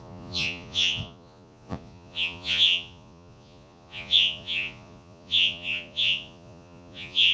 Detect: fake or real fake